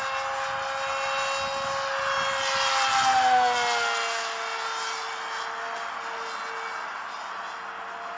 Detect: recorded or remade recorded